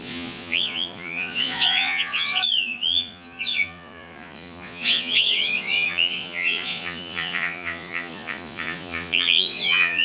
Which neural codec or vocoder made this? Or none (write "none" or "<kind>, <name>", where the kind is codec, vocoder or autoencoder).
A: vocoder, Vocos